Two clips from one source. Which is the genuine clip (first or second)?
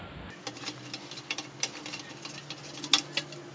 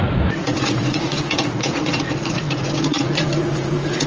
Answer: first